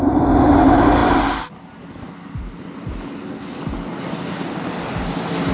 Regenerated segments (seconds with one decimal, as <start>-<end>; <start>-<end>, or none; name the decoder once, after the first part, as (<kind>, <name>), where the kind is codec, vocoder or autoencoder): none